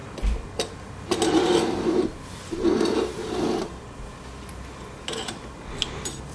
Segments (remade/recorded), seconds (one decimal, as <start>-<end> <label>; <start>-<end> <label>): 0.0-6.3 recorded